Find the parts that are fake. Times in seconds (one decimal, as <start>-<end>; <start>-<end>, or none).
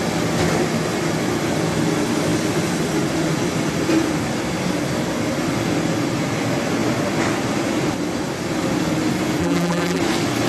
9.4-10.0